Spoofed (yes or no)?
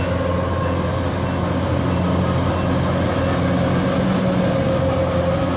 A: no